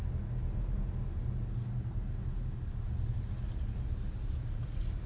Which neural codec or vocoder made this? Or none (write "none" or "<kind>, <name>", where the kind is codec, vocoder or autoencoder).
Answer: none